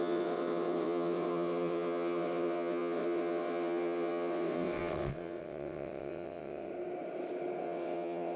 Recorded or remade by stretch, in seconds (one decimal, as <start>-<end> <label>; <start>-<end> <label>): 0.0-6.7 remade; 6.7-7.6 recorded; 7.6-8.4 remade

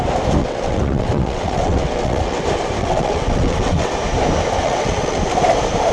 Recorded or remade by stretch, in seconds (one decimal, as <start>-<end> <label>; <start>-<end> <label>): 0.0-0.4 recorded; 0.4-2.4 remade; 2.4-2.8 recorded; 2.8-3.9 remade; 3.9-4.6 recorded; 4.6-5.2 remade; 5.2-5.9 recorded

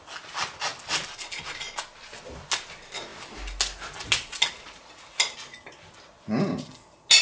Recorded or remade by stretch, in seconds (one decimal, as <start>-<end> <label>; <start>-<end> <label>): 0.0-7.2 recorded